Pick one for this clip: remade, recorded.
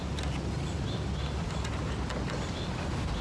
recorded